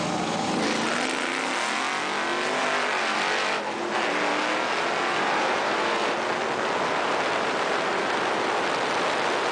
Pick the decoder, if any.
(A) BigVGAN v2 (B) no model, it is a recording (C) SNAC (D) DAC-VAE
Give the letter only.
B